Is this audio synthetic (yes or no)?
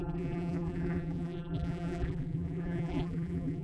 yes